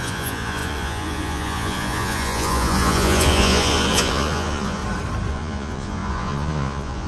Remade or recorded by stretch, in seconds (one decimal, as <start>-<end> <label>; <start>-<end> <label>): 0.0-4.8 remade; 4.8-5.3 recorded; 5.3-7.1 remade